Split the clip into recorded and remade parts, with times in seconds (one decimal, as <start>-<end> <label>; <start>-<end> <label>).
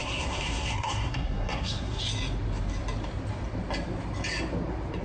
0.0-2.0 remade; 2.0-5.0 recorded